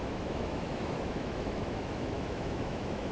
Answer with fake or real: fake